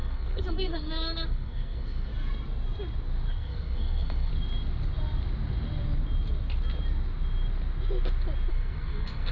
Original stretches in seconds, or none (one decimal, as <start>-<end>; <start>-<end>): 2.1-3.3; 4.3-8.5